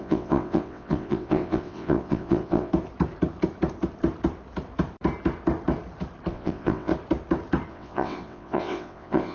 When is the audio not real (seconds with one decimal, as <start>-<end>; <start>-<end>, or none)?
0.0-2.7; 6.3-6.9; 7.7-9.3